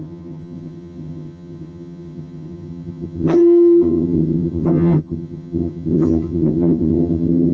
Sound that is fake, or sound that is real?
fake